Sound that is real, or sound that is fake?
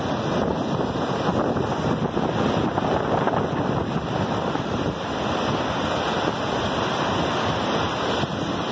real